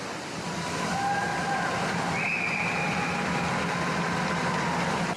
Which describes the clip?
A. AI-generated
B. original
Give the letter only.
B